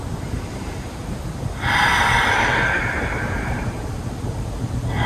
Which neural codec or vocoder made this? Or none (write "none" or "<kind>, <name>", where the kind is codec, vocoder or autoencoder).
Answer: vocoder, BigVGAN v2